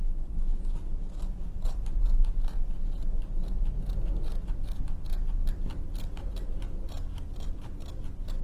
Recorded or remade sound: recorded